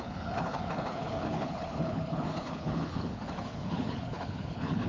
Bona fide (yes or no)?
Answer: no